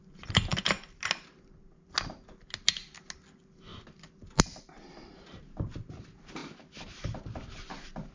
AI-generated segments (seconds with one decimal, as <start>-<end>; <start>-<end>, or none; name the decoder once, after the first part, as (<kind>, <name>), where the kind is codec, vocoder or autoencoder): none